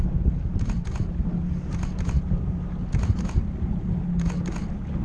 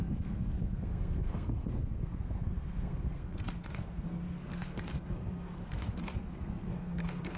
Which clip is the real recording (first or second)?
first